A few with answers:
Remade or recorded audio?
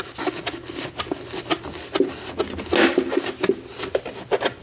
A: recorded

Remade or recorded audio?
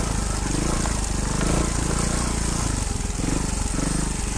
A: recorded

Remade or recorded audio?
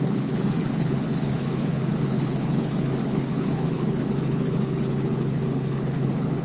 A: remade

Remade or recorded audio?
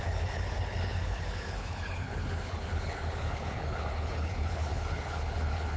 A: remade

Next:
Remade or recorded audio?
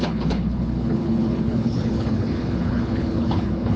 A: remade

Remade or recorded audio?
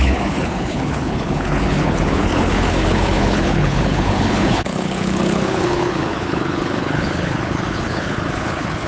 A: remade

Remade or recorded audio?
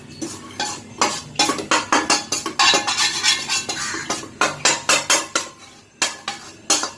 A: recorded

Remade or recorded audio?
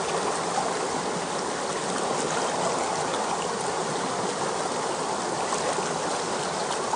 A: recorded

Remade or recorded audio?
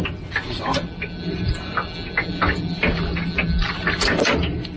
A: recorded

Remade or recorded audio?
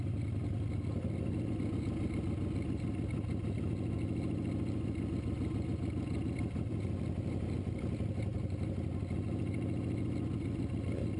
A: recorded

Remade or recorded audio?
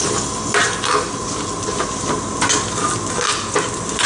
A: recorded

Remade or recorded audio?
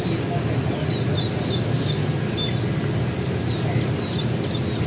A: recorded